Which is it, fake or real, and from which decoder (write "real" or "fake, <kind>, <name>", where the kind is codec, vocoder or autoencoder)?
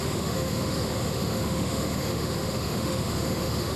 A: fake, autoencoder, DAC-VAE